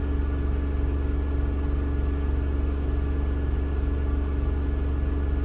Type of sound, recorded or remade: recorded